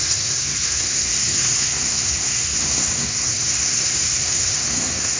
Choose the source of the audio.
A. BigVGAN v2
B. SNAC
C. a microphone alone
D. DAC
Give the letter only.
B